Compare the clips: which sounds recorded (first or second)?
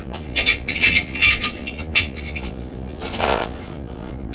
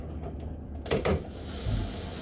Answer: second